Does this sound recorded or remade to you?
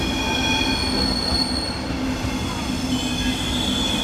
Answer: recorded